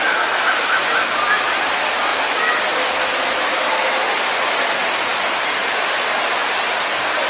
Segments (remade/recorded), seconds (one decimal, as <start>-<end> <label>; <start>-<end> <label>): 0.0-7.3 recorded

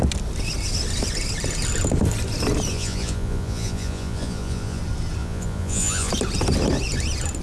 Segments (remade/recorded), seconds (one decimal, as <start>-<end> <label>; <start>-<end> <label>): 0.0-2.7 recorded; 2.7-4.8 remade; 4.8-5.2 recorded; 5.2-6.1 remade; 6.1-7.4 recorded